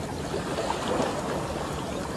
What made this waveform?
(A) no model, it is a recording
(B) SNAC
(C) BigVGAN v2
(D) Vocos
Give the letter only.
A